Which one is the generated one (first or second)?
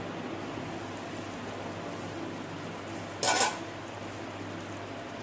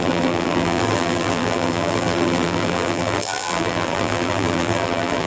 second